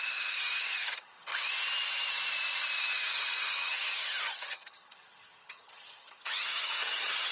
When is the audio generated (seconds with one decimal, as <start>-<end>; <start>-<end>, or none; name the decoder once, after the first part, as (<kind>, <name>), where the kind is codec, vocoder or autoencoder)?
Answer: 0.0-1.3 (vocoder, HiFi-GAN); 2.8-7.3